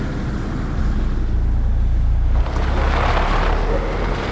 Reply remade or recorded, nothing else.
recorded